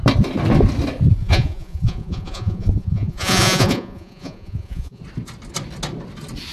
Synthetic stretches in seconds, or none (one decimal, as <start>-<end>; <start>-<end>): 1.2-5.0